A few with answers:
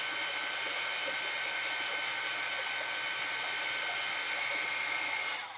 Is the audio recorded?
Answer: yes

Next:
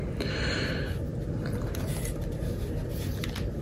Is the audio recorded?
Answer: yes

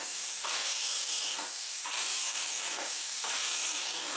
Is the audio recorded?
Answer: no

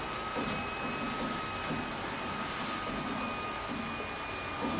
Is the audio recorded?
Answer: yes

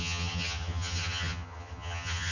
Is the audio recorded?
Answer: no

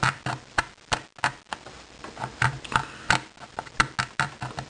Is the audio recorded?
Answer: yes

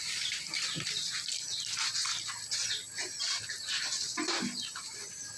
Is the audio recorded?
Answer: yes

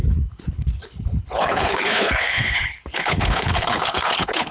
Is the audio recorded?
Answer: no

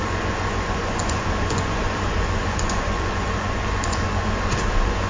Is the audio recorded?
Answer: no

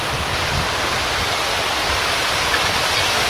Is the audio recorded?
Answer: yes